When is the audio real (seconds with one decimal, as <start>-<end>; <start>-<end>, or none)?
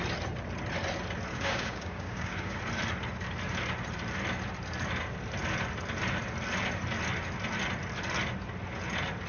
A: 0.0-1.3; 2.6-9.3